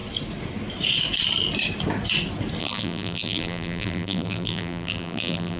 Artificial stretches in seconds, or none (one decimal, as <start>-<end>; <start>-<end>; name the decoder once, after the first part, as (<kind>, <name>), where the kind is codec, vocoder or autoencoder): 2.6-5.6 (vocoder, BigVGAN v2)